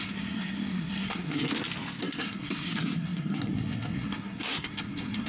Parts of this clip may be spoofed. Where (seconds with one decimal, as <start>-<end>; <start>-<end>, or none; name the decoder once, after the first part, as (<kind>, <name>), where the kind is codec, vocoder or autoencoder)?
0.0-1.5 (codec, SNAC); 2.0-5.3

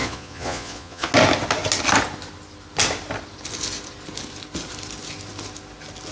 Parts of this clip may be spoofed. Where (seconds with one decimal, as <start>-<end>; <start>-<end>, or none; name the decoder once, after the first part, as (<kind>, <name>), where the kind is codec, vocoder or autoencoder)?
0.0-1.1 (vocoder, Vocos)

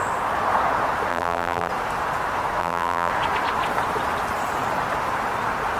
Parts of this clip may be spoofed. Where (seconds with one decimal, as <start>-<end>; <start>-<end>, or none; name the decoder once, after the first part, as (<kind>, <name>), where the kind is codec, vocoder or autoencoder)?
1.1-1.7 (vocoder, BigVGAN v2); 2.6-3.1

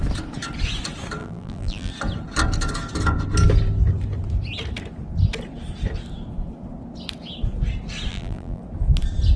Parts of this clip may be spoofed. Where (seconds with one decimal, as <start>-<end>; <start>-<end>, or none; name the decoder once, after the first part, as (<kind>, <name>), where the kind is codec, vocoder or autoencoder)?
1.2-1.9 (vocoder, BigVGAN v2); 8.1-8.6

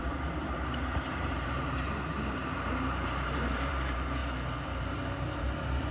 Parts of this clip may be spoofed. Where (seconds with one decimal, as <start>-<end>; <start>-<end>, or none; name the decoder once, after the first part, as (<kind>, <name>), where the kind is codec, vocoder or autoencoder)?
0.0-5.9 (vocoder, BigVGAN v2)